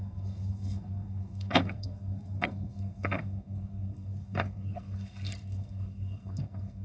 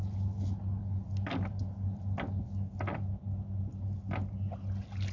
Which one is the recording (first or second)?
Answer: second